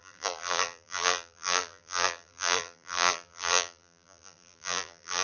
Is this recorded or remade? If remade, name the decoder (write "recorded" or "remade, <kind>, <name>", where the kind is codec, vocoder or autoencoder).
remade, vocoder, BigVGAN v2